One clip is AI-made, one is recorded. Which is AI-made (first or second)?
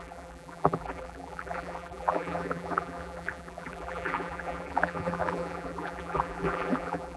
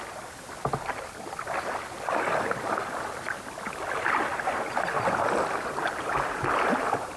first